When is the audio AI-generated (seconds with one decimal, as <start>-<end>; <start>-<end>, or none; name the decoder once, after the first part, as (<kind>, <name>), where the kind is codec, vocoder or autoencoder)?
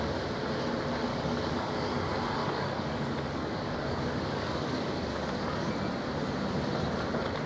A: 1.1-2.0 (codec, DAC); 2.4-5.7